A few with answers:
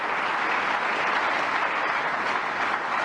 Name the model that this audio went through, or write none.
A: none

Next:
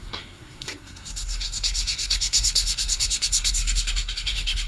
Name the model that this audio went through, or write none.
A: codec, SNAC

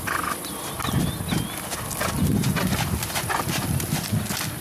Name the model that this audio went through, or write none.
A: none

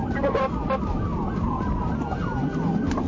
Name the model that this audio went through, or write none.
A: none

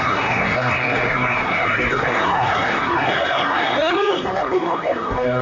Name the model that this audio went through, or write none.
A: codec, SNAC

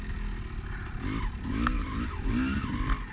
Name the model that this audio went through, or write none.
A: none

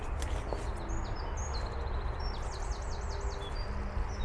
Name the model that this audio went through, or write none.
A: none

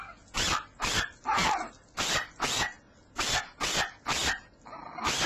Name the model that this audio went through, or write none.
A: none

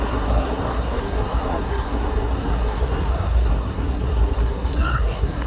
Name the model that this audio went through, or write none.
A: codec, SNAC